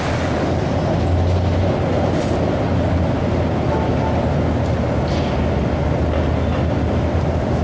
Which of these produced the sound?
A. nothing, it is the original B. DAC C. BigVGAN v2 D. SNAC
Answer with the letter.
A